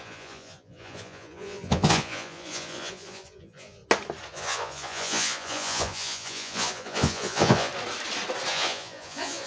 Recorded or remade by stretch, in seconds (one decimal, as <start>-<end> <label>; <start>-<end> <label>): 0.0-3.8 remade; 3.8-4.3 recorded; 4.3-7.7 remade; 7.7-8.5 recorded; 8.5-9.5 remade